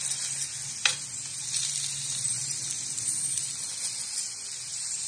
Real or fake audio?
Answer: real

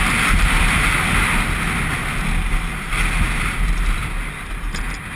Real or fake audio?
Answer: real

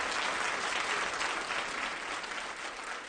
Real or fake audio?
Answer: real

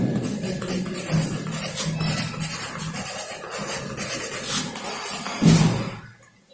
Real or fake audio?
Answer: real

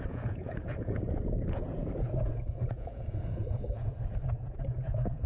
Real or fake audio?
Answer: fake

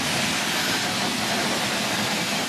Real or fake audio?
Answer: real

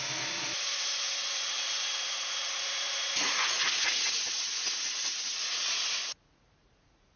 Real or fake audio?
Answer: fake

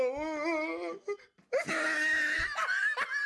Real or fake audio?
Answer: real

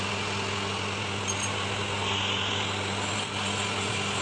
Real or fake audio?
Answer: real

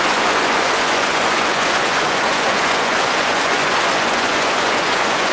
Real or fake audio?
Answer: fake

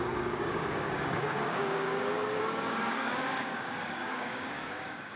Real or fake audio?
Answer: fake